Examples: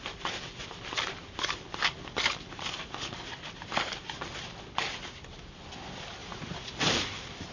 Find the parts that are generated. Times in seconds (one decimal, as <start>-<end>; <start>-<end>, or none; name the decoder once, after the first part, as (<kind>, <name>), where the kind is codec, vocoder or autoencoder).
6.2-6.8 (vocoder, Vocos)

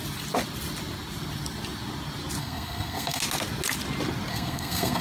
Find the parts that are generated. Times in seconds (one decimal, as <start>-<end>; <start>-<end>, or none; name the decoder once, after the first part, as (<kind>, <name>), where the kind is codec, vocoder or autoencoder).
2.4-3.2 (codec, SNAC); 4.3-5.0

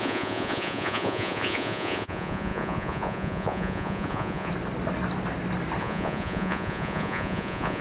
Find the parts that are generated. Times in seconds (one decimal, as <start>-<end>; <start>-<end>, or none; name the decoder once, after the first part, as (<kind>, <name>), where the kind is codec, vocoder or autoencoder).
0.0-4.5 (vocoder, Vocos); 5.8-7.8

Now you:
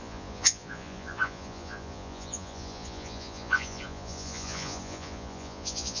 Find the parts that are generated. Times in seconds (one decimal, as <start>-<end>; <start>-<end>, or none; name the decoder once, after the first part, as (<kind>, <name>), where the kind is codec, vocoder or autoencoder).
0.0-6.0 (vocoder, Vocos)